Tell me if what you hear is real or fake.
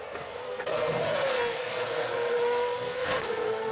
fake